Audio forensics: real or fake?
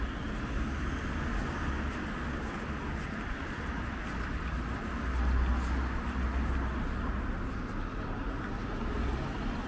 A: real